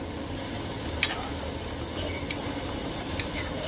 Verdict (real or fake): real